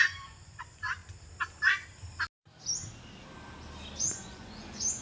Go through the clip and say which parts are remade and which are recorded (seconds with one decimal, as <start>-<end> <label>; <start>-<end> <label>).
0.0-1.0 remade; 1.0-4.0 recorded; 4.0-5.0 remade